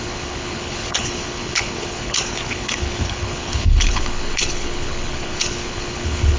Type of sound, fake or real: fake